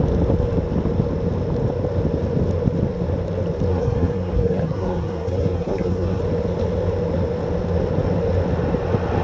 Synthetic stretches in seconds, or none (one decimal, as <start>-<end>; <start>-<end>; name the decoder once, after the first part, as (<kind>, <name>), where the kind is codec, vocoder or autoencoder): 3.7-6.2 (codec, SNAC)